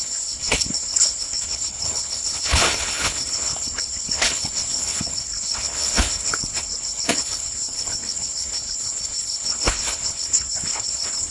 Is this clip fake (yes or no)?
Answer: yes